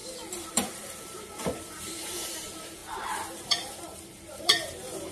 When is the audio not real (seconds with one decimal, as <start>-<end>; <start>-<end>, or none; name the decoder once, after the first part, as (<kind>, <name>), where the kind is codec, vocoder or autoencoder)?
0.5-5.1 (vocoder, BigVGAN v2)

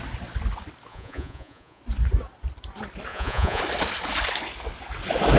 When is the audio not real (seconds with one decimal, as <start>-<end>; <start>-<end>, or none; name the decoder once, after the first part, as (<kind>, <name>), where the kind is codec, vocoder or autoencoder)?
0.9-1.8 (vocoder, Vocos); 3.1-3.6

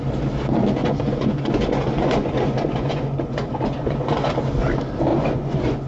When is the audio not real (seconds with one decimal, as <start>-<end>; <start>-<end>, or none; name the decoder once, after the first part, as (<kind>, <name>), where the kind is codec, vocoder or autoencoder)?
0.8-4.3 (vocoder, Vocos); 5.1-5.9

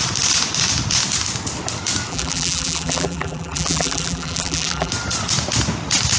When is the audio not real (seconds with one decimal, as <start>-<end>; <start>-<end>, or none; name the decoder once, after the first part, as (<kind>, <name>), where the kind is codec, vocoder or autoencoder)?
2.1-4.9 (vocoder, BigVGAN v2)

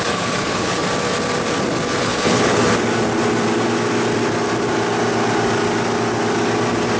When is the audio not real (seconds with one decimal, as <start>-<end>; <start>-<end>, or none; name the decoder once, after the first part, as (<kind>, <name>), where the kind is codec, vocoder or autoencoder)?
0.0-0.8 (codec, HILCodec); 2.0-2.6

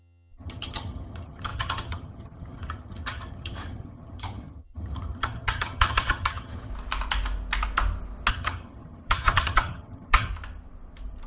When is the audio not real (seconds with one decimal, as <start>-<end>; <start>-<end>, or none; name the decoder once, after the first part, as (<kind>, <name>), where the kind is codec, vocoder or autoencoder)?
0.0-6.7 (vocoder, HiFi-GAN); 8.3-10.3

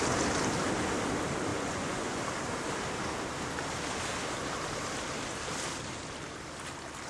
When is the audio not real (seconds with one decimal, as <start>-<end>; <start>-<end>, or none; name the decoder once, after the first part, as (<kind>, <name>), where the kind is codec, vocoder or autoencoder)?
1.5-2.2 (vocoder, Vocos)

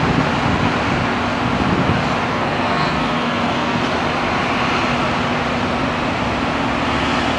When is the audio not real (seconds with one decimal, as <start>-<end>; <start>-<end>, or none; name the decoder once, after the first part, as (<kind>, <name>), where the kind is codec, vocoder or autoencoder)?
2.3-3.8 (codec, SNAC)